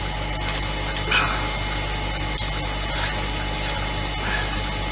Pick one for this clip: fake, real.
real